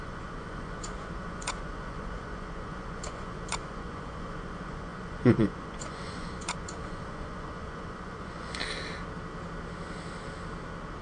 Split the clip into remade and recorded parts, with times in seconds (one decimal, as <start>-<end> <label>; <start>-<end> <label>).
0.0-8.6 remade; 8.6-11.0 recorded